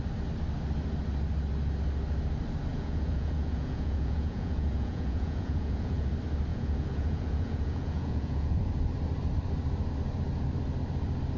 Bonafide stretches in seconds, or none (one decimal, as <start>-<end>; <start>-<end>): 0.0-2.7; 6.1-6.5; 8.6-11.4